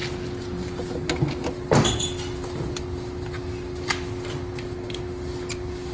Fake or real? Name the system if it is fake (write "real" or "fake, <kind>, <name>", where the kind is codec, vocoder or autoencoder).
real